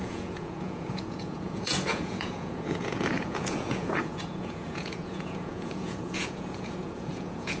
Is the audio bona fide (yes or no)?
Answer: no